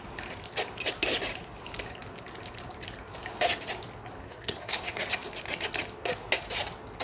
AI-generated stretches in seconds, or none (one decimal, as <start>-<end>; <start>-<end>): 4.2-5.0